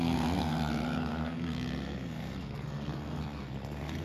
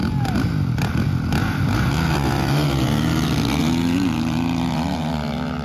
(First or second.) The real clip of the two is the second